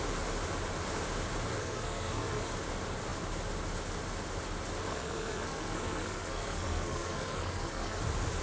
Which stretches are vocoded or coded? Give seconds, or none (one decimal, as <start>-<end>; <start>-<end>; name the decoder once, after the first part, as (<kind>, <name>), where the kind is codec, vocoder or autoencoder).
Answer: 1.6-2.5 (codec, SNAC); 4.9-8.0